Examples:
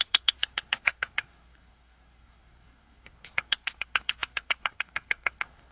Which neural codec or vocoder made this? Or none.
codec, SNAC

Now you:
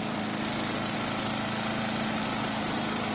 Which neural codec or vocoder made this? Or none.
none